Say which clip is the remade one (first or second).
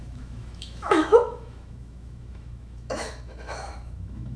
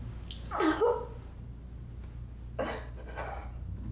first